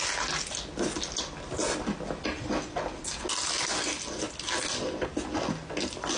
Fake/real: real